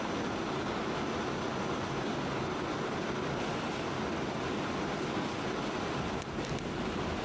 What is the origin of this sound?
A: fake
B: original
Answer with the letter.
B